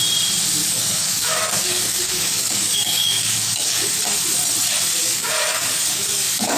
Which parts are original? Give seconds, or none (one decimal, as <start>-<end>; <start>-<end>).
0.0-0.6; 3.9-5.0